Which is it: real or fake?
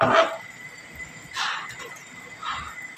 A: real